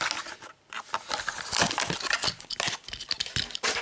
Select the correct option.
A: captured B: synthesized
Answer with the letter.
A